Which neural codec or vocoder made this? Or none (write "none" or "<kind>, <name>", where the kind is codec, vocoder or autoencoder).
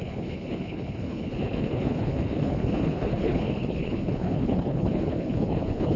codec, HILCodec